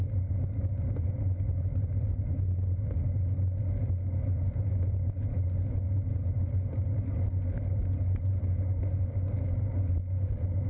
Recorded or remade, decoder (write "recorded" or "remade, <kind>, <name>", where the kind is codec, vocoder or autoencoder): recorded